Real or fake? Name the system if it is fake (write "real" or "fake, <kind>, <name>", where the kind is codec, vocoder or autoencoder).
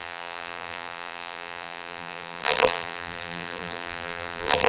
fake, vocoder, BigVGAN v2